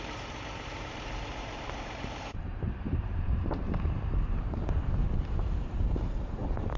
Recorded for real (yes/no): no